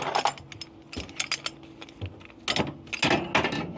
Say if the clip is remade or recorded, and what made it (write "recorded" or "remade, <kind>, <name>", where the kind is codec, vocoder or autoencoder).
recorded